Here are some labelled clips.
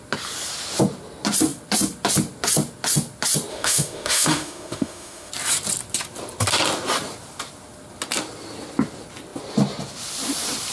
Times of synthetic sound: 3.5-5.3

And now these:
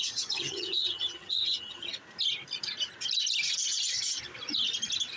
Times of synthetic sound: 0.0-1.9

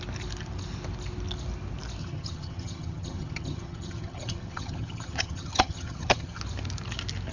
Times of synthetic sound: 2.0-6.4

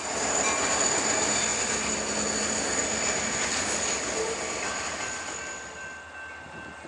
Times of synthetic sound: none

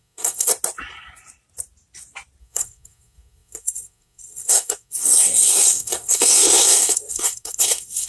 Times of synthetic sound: 0.0-0.5; 2.4-8.1

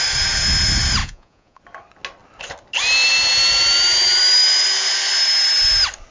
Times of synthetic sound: 1.0-1.6

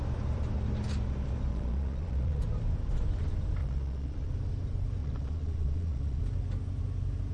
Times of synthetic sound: 1.5-2.4; 3.6-4.3; 5.0-6.2